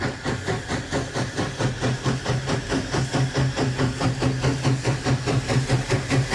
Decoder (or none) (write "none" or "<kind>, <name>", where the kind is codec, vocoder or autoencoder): none